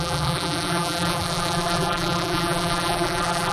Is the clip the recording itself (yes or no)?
no